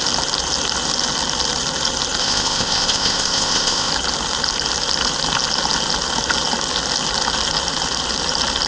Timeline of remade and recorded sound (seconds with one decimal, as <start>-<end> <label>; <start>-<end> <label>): 0.0-2.2 recorded; 2.2-3.9 remade; 3.9-8.7 recorded